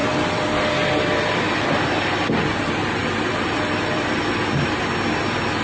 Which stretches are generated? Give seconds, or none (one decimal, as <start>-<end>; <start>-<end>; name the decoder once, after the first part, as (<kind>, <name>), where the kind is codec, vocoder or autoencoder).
0.0-2.3 (vocoder, BigVGAN v2); 3.0-4.5